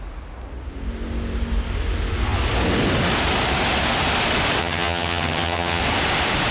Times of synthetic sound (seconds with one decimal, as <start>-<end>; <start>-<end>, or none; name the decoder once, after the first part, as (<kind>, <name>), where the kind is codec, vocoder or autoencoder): 4.6-5.8 (vocoder, HiFi-GAN)